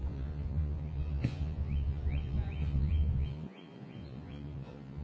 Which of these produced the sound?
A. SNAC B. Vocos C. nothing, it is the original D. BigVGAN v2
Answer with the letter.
B